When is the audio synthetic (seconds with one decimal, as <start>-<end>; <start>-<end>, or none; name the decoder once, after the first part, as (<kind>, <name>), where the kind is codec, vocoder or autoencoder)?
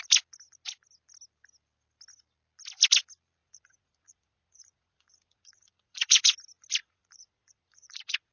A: 3.4-6.3 (vocoder, Vocos); 6.8-8.3